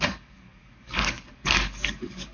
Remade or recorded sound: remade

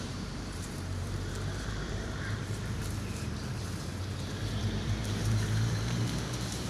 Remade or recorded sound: remade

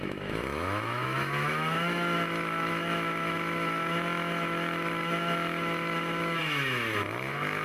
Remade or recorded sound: remade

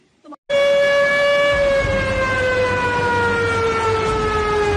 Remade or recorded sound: recorded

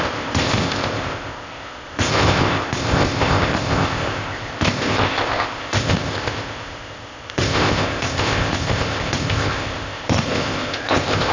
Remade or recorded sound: remade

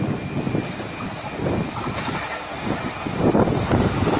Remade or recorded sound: recorded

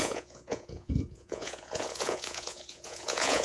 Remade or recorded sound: remade